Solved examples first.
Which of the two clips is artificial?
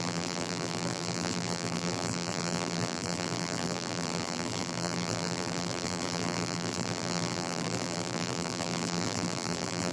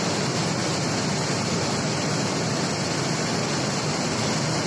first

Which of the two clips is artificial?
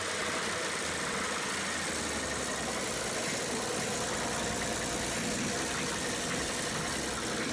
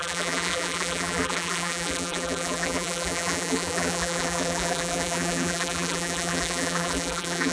second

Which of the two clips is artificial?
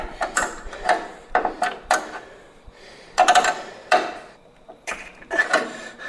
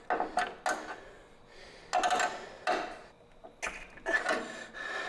first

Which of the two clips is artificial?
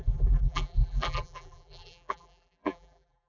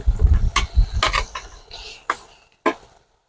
first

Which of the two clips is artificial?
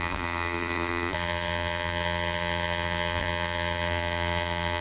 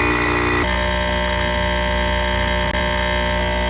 first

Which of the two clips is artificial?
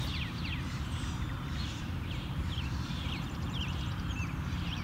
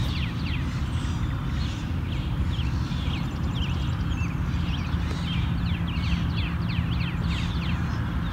first